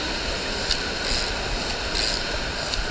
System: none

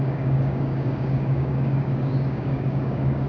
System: codec, DAC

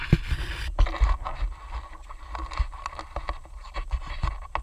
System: none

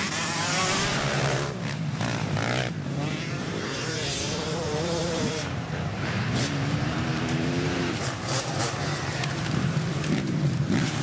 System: vocoder, BigVGAN v2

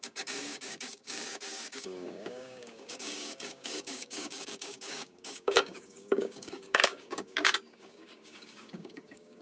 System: codec, DAC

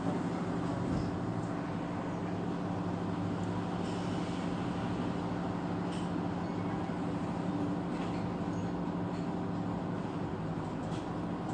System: none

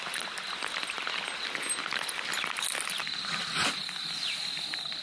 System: none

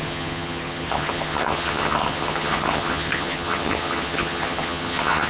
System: vocoder, HiFi-GAN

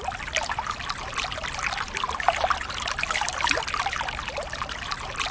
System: none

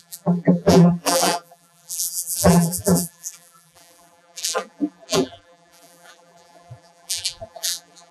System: vocoder, BigVGAN v2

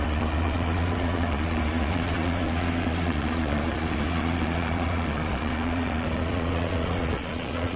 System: vocoder, Vocos